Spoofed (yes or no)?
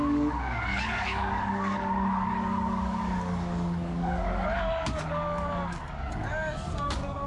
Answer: yes